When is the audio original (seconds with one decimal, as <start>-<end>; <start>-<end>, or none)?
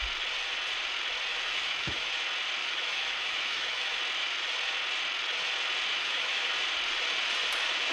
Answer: 0.0-1.3; 2.1-2.6; 4.0-5.9; 6.5-7.9